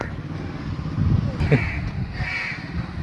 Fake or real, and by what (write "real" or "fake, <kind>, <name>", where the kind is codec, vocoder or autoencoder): real